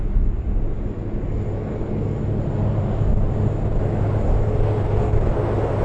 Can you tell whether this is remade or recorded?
recorded